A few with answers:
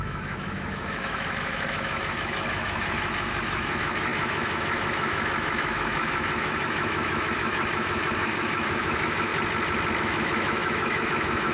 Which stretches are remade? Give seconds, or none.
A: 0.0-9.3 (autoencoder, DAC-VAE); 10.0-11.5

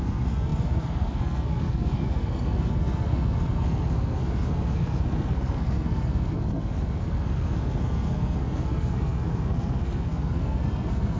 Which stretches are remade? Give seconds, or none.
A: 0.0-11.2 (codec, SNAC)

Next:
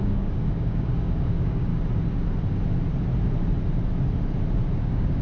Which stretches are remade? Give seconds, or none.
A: 0.0-1.7 (codec, DAC); 4.8-5.2

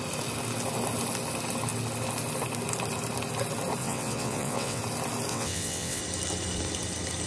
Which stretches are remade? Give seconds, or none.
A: 3.8-4.8 (vocoder, WaveNeXt); 5.3-6.0